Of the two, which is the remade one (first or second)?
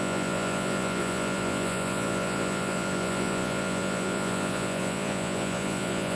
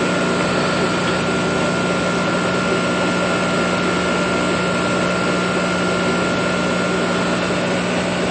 first